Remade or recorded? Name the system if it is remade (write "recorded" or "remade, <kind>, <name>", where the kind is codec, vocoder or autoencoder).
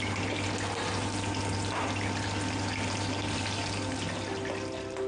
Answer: recorded